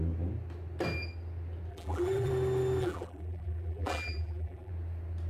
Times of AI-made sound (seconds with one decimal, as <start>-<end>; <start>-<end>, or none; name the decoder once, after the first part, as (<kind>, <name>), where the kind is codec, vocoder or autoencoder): 1.7-2.3 (vocoder, BigVGAN v2); 2.8-4.7

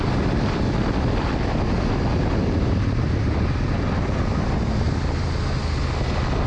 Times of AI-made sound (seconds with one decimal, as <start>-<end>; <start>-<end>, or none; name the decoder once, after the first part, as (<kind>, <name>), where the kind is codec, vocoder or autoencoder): 2.4-3.5 (vocoder, BigVGAN v2)

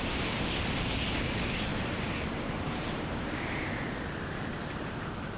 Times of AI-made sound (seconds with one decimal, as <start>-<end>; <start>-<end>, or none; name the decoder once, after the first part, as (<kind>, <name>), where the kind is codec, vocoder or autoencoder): 1.7-3.8 (vocoder, BigVGAN v2)

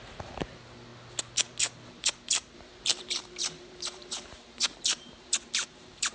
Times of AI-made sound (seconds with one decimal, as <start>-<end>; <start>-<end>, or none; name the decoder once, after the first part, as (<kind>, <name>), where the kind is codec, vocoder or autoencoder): 0.0-0.9 (vocoder, BigVGAN v2); 2.0-6.1